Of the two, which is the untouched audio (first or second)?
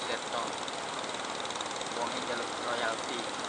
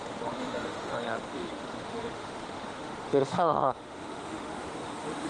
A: first